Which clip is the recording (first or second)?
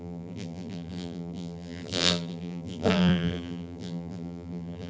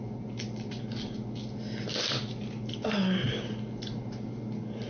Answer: second